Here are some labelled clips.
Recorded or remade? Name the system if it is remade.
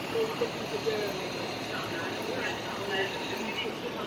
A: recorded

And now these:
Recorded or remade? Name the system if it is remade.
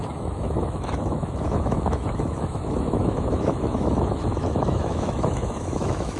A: remade, autoencoder, DAC-VAE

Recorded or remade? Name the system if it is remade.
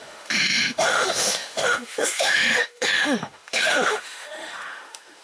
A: remade, autoencoder, DAC-VAE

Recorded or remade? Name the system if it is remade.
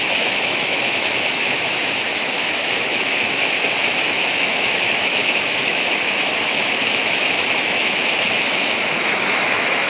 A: remade, autoencoder, DAC-VAE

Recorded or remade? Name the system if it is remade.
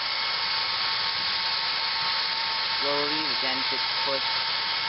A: recorded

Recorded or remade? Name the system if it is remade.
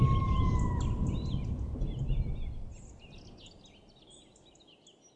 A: recorded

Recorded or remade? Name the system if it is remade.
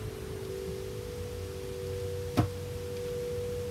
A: recorded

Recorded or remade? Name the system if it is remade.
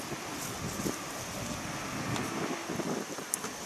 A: recorded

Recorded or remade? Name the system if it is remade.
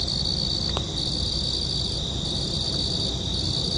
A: recorded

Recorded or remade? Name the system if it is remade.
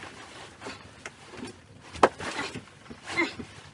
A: recorded